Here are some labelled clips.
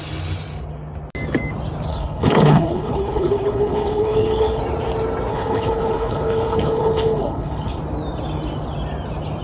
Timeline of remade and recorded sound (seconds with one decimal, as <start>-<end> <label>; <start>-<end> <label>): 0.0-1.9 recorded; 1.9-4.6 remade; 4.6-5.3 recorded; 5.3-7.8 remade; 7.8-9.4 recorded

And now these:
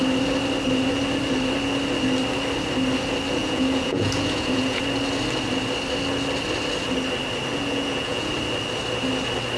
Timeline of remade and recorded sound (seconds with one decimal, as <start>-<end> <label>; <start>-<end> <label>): 0.0-3.4 recorded; 3.4-4.8 remade; 4.8-7.5 recorded; 7.5-8.3 remade; 8.3-9.6 recorded

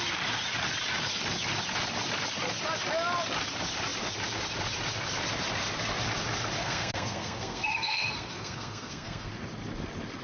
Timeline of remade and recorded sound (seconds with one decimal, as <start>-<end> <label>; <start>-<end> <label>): 0.0-6.6 recorded; 6.6-9.3 remade; 9.3-10.2 recorded